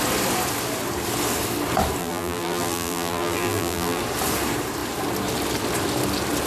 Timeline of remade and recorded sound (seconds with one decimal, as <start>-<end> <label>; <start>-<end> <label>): 0.0-2.0 recorded; 2.0-4.0 remade; 4.0-6.5 recorded